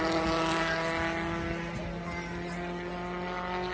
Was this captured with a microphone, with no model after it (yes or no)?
yes